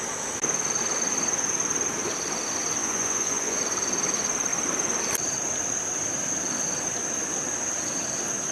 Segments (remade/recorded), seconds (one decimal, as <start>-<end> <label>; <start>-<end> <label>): 0.0-2.8 recorded; 2.8-3.6 remade; 3.6-8.5 recorded